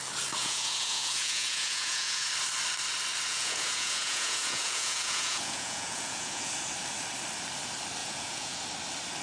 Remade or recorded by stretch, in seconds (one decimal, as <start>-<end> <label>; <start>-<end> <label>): 0.0-0.4 recorded; 0.4-2.3 remade; 2.3-3.3 recorded; 3.3-6.5 remade; 6.5-8.0 recorded; 8.0-8.6 remade; 8.6-9.2 recorded